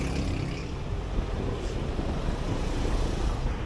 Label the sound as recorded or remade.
recorded